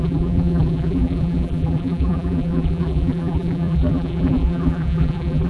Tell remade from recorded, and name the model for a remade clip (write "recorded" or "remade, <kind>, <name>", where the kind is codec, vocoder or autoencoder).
remade, vocoder, BigVGAN v2